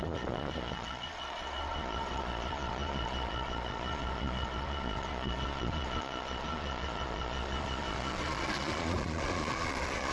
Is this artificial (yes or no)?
yes